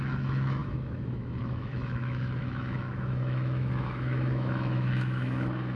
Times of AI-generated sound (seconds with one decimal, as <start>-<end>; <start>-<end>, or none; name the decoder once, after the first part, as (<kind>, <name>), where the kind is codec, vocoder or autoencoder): 0.0-5.8 (autoencoder, DAC-VAE)